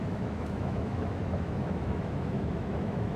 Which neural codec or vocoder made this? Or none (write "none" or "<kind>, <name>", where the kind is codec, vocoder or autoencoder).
autoencoder, DAC-VAE